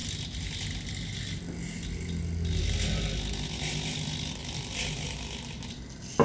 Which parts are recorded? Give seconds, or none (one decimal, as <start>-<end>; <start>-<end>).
0.0-6.2